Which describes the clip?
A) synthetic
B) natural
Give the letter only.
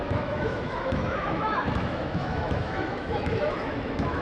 A